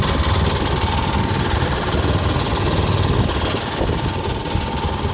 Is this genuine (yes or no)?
yes